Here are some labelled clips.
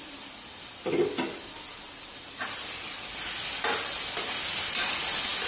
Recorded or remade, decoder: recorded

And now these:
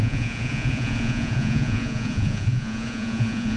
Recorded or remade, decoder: remade, vocoder, Vocos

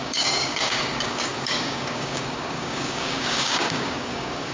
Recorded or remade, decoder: remade, codec, DAC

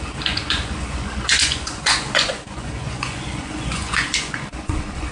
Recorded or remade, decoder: remade, vocoder, Vocos